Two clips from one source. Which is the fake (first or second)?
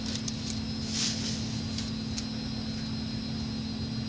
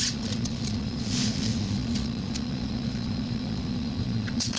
second